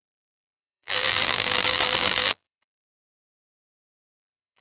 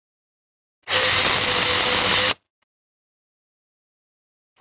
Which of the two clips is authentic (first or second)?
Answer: second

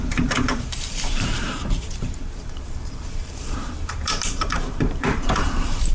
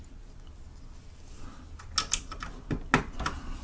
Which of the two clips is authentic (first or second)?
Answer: second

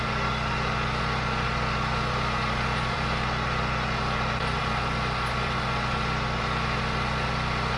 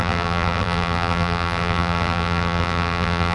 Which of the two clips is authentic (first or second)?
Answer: first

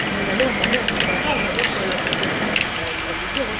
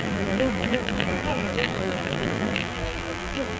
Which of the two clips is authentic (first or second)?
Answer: first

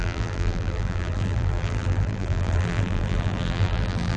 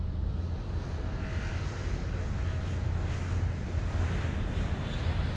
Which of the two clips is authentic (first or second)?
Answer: second